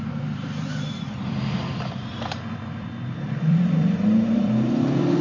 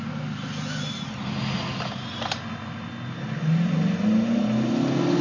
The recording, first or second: second